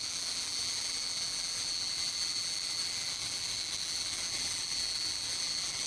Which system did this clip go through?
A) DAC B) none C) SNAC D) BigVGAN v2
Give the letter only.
D